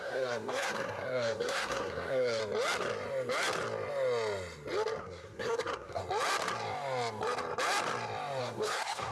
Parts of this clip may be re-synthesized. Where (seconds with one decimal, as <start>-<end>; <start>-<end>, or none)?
0.0-2.4; 5.0-6.0; 8.4-9.1